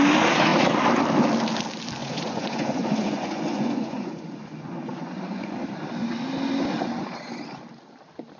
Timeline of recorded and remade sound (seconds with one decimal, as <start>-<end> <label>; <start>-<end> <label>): 0.0-2.0 recorded; 2.0-5.6 remade; 5.6-8.4 recorded